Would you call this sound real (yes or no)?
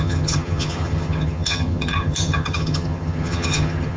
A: no